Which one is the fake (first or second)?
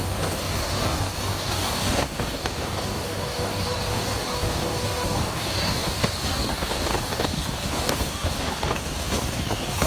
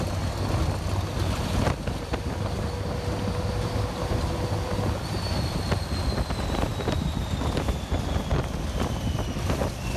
first